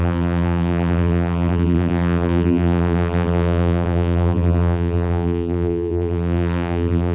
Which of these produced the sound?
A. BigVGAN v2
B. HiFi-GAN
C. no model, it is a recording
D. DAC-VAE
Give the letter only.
A